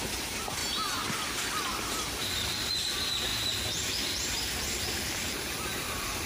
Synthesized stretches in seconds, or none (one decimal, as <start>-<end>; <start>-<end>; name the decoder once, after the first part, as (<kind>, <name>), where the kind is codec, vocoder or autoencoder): 0.0-0.6 (vocoder, BigVGAN v2); 1.8-6.3